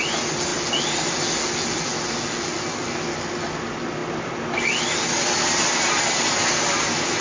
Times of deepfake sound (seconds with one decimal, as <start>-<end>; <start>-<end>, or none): none